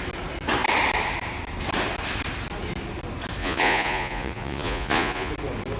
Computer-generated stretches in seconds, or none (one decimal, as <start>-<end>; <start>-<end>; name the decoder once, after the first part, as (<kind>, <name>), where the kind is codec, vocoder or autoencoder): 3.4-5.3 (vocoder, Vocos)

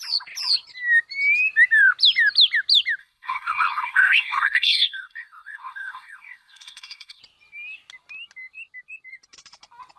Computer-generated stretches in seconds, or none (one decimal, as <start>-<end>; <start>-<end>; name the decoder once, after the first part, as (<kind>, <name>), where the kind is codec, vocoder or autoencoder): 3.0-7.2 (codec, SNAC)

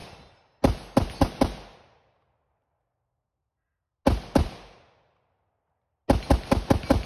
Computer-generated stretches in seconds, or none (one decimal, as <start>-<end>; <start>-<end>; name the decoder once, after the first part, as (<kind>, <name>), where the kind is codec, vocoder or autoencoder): none

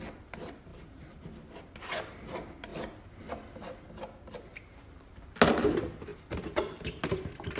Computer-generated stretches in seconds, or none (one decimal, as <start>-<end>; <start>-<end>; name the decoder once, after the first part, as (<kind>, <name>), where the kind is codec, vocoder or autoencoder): 0.7-1.3 (vocoder, BigVGAN v2); 4.5-5.1; 6.1-7.0

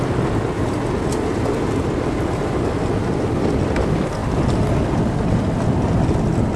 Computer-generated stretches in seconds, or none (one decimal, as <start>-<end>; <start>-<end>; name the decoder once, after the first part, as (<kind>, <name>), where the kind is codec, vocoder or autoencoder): none